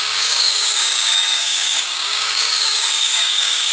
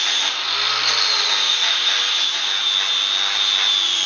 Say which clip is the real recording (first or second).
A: second